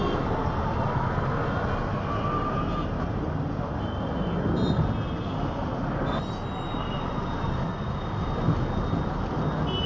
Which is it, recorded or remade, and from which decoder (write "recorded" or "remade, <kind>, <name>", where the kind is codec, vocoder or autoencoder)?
recorded